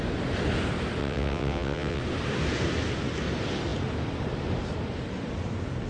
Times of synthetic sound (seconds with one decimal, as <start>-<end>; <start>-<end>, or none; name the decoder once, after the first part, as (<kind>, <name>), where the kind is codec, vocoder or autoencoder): 1.0-2.0 (vocoder, WaveNeXt)